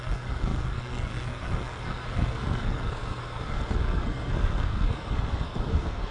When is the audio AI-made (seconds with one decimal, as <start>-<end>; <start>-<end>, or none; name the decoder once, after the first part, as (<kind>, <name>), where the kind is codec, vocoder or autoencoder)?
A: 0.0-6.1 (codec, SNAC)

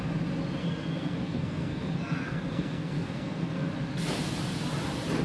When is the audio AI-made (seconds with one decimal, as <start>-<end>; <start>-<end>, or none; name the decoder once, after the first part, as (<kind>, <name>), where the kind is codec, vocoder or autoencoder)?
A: 0.6-3.7 (codec, SNAC)

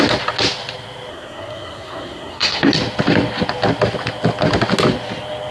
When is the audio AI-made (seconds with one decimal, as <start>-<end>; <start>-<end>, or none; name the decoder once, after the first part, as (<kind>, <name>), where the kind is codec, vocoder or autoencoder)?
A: 1.1-2.7 (codec, SNAC)

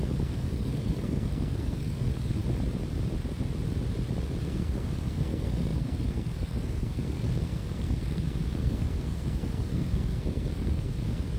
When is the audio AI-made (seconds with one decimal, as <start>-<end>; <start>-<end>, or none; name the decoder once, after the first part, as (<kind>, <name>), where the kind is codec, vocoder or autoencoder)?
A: 0.0-2.4 (codec, SNAC); 4.4-11.4

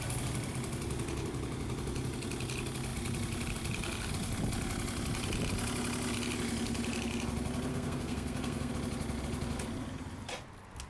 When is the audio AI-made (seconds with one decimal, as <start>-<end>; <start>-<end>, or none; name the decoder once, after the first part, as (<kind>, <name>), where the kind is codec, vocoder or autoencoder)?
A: 7.7-8.7 (codec, SNAC)

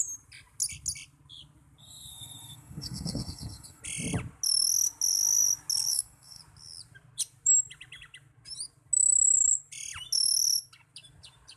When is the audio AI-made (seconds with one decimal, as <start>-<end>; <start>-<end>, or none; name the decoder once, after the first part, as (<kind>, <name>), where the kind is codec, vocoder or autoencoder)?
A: 1.8-3.8 (codec, SNAC); 5.9-6.4

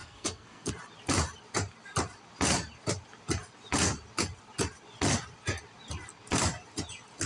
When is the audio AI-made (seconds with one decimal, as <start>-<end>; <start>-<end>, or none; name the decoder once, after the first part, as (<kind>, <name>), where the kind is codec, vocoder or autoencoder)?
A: 0.0-0.7 (codec, SNAC)